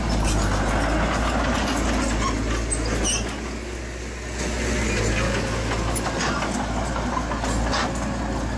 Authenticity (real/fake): real